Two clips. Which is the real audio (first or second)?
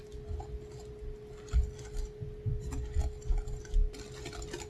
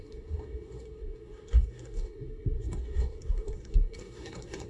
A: first